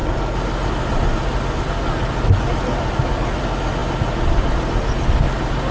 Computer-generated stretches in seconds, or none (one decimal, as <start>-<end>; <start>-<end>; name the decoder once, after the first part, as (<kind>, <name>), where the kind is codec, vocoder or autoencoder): none